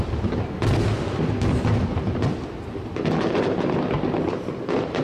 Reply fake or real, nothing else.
real